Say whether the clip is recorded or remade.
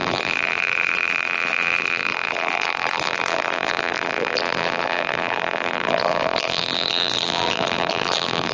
remade